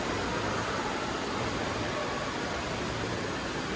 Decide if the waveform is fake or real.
real